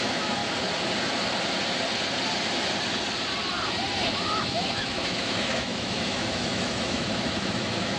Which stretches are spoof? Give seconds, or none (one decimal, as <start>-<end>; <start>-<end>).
0.0-0.4; 4.4-8.0